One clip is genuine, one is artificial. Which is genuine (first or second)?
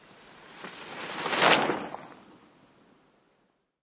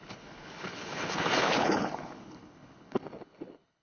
first